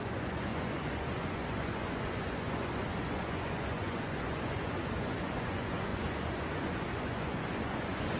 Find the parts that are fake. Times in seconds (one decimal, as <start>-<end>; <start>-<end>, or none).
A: 0.0-8.2